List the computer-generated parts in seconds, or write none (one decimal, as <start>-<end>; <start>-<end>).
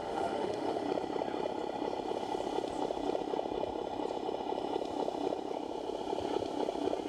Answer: 0.0-0.8